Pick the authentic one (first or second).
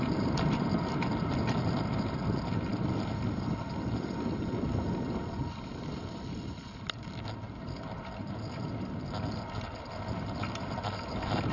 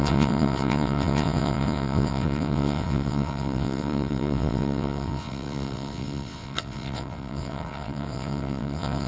first